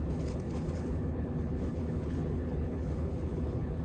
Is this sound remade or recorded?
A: remade